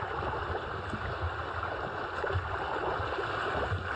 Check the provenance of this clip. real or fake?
real